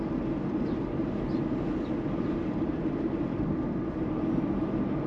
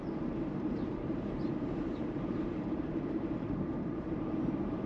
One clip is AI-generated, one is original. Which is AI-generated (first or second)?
second